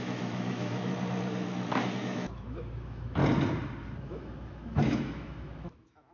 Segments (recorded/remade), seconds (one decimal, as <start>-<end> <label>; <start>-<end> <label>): 0.0-0.9 remade; 0.9-2.0 recorded; 2.0-3.2 remade; 3.2-4.0 recorded; 4.0-6.1 remade